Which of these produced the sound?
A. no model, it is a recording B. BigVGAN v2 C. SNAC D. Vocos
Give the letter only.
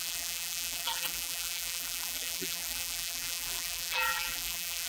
B